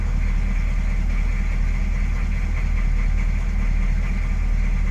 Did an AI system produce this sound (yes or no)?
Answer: no